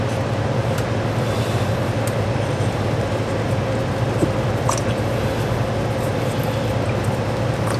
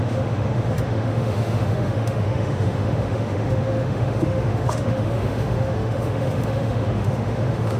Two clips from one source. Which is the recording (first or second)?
first